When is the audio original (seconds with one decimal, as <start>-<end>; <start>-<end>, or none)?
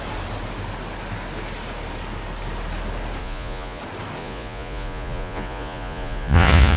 0.0-3.2; 3.8-4.2